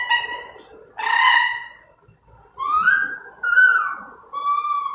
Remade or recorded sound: recorded